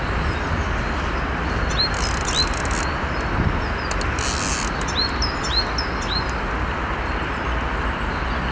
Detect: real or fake real